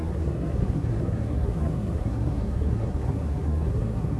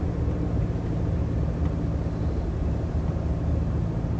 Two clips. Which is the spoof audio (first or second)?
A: first